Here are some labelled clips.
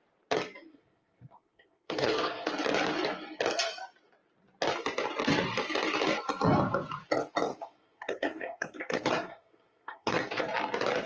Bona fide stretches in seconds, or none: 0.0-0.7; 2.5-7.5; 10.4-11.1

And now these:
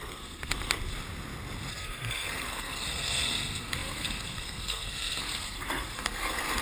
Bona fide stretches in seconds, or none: 0.5-1.7

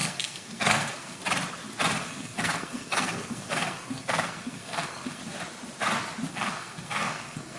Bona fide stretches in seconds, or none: 1.2-2.0; 5.2-6.3

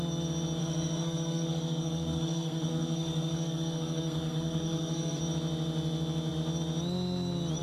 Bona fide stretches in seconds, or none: 0.0-0.6; 5.2-7.6

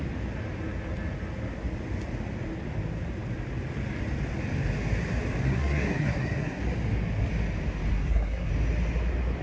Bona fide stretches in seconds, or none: 0.0-5.4; 6.6-7.9; 8.5-9.4